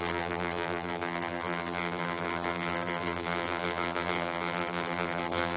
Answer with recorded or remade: remade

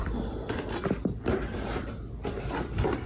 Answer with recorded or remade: remade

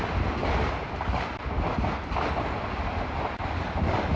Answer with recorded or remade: recorded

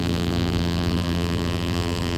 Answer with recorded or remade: remade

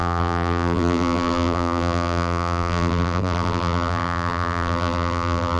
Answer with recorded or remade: remade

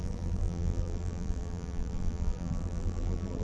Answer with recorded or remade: remade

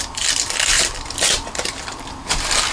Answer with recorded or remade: remade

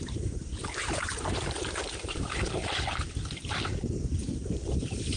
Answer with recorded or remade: remade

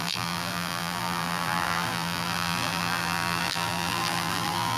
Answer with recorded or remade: remade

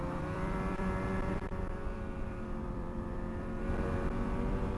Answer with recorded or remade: remade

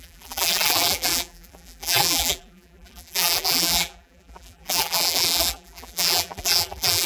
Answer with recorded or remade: remade